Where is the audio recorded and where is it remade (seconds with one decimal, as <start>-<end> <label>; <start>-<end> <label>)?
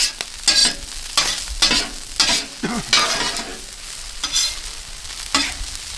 0.0-6.0 recorded